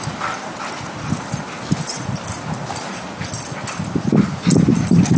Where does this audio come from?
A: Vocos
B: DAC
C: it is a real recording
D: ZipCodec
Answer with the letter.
C